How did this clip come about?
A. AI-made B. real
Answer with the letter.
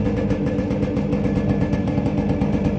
B